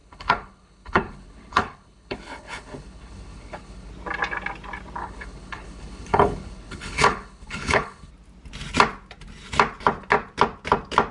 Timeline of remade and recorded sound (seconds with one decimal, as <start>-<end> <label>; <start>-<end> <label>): 0.0-3.9 remade; 3.9-5.0 recorded; 5.0-8.1 remade; 8.1-11.1 recorded